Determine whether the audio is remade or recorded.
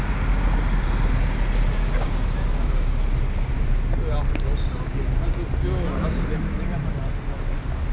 recorded